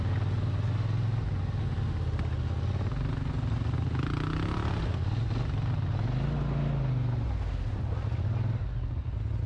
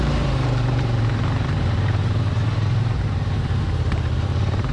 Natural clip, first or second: first